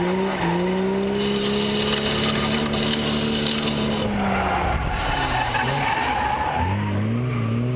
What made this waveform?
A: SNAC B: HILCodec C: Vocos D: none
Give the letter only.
D